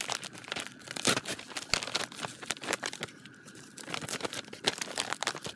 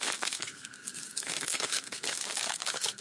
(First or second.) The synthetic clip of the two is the second